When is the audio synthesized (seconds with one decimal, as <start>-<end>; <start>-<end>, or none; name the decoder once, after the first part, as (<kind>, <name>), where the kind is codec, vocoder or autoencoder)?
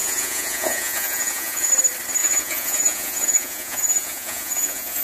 0.0-1.7 (vocoder, Vocos); 2.2-5.0